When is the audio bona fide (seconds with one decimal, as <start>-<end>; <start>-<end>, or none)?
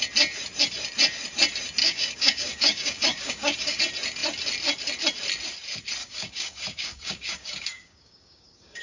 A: 0.0-1.8; 3.8-6.0